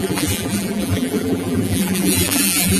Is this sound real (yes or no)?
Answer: no